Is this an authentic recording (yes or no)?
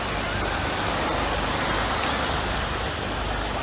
yes